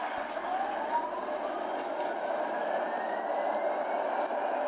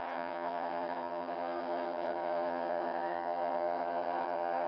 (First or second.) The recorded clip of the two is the first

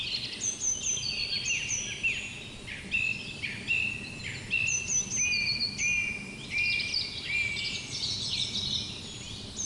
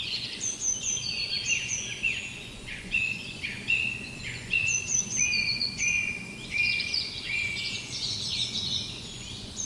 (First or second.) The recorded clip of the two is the first